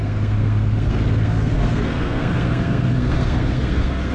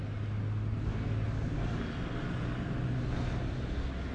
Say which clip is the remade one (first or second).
first